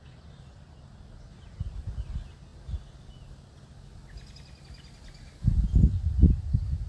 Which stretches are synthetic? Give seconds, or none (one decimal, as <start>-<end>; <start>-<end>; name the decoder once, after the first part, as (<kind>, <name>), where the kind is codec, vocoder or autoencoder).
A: none